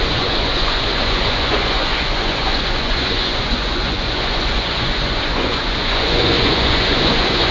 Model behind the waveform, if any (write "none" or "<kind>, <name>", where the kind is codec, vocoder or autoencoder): vocoder, Vocos